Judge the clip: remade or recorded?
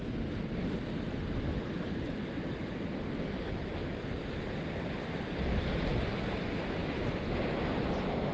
recorded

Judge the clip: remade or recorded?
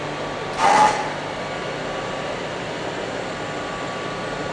recorded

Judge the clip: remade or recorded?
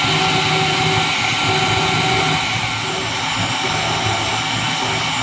recorded